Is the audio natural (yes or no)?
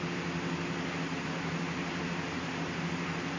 yes